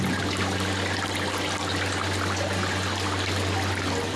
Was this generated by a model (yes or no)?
no